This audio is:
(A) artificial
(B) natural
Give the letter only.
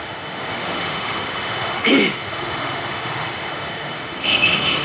A